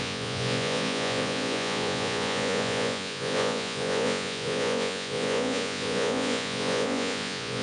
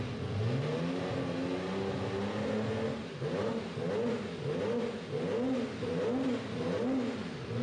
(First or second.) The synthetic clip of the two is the first